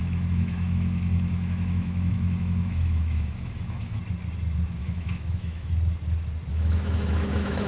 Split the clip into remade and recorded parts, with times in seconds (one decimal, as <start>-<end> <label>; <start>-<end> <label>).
0.0-4.0 remade; 4.0-4.8 recorded; 4.8-5.7 remade; 5.7-6.5 recorded; 6.5-7.7 remade